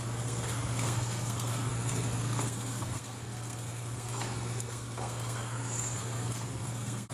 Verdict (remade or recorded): remade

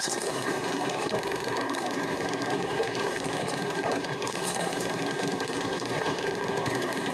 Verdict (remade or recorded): remade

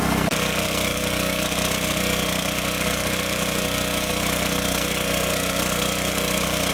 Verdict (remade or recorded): remade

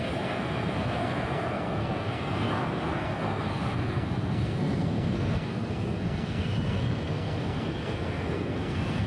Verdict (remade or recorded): remade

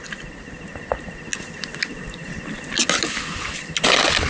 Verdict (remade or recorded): recorded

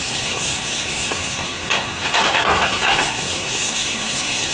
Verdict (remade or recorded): remade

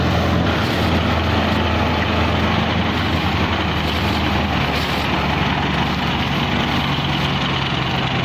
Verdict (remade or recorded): recorded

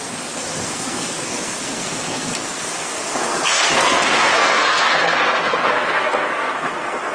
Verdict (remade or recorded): remade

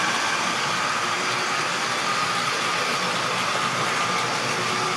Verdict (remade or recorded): recorded